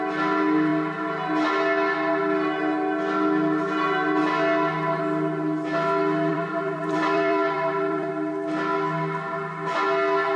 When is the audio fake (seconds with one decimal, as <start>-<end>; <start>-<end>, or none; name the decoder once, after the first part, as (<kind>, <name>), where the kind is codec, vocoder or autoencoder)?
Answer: 6.3-8.1 (vocoder, BigVGAN v2)